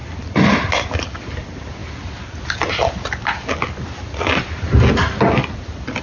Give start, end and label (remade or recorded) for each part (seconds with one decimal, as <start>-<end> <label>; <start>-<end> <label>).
0.0-6.0 recorded